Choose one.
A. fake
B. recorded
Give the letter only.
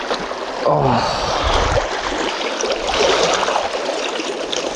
B